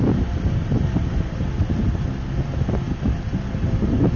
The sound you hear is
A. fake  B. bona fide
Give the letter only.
B